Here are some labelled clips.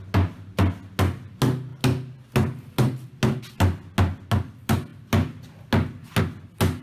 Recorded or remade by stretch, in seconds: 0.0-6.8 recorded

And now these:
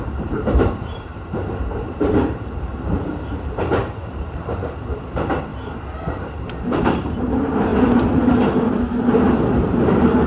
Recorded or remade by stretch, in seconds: 0.0-5.5 remade; 5.5-6.4 recorded; 6.4-7.7 remade; 7.7-9.1 recorded; 9.1-10.3 remade

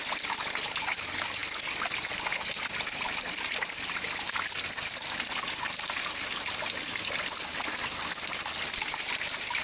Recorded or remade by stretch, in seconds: 0.0-0.8 remade; 0.8-9.6 recorded